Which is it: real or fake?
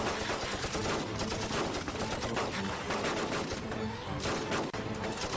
real